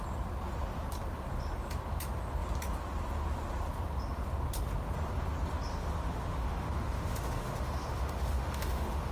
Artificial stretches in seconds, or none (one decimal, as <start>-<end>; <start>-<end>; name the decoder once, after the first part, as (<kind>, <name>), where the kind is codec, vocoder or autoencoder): 5.7-9.1 (autoencoder, DAC-VAE)